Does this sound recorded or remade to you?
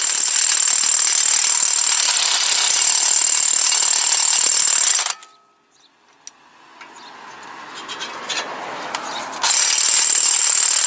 recorded